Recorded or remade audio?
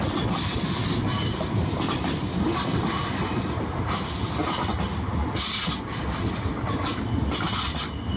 recorded